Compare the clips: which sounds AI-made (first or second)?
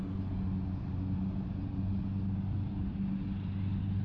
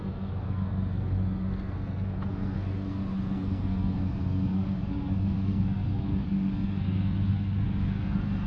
second